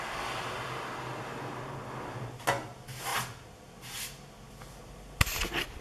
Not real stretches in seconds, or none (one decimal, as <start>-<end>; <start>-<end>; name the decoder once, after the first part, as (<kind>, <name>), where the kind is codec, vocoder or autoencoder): none